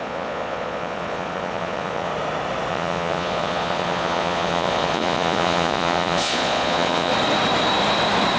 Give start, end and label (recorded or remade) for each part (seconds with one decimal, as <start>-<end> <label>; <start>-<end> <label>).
0.0-2.1 remade; 2.1-2.7 recorded; 2.7-7.1 remade; 7.1-8.4 recorded

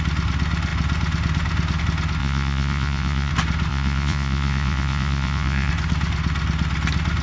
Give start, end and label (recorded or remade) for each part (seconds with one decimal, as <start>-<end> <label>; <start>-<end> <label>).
0.0-2.2 recorded; 2.2-3.3 remade; 3.3-3.7 recorded; 3.7-5.7 remade; 5.7-7.2 recorded

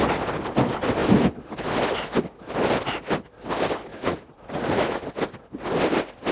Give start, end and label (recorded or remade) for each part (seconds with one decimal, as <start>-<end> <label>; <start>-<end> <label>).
0.0-3.9 recorded; 3.9-5.0 remade; 5.0-6.3 recorded